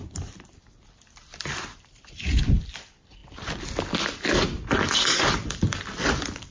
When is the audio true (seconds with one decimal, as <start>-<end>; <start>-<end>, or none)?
3.2-4.9